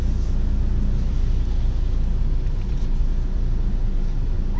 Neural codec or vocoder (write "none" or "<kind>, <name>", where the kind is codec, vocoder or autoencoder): none